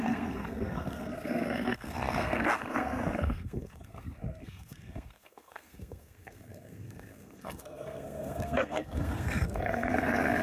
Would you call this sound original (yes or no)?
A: no